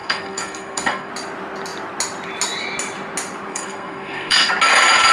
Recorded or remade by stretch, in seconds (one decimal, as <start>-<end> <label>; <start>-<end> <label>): 0.0-1.1 remade; 1.1-3.5 recorded; 3.5-4.5 remade; 4.5-5.1 recorded